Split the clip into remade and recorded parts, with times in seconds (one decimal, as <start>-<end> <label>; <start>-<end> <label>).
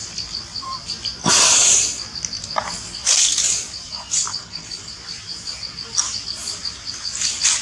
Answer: 0.0-4.3 recorded; 4.3-4.9 remade; 4.9-7.6 recorded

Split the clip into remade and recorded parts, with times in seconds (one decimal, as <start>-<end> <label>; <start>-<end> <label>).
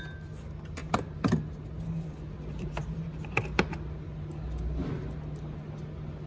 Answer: 0.0-6.3 recorded